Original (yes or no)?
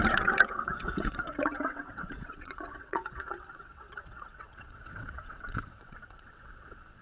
no